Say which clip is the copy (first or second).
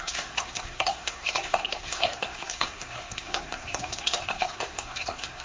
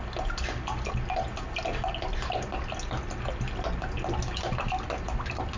first